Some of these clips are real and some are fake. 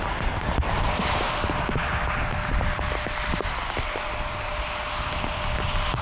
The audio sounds real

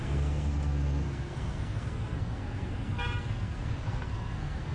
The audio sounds fake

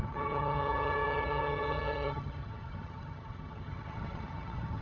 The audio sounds fake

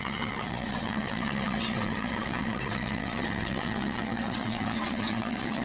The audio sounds fake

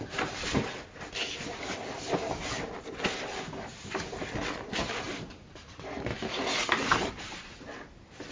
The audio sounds real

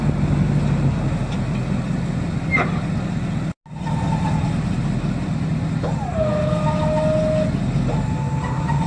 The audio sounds real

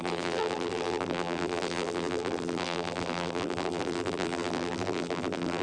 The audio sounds fake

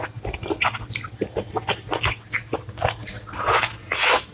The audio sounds real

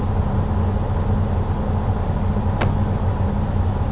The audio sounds real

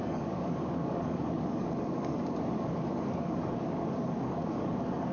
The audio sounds fake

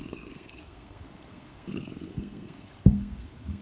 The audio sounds fake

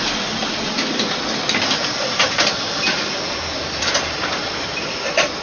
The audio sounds fake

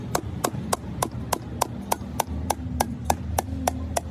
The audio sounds real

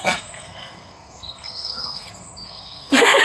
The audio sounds fake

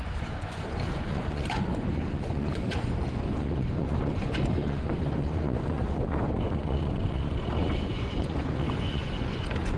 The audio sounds fake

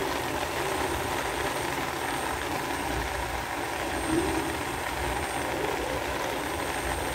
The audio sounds real